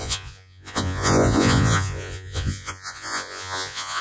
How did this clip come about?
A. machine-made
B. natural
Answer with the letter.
A